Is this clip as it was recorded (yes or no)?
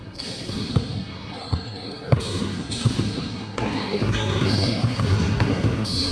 no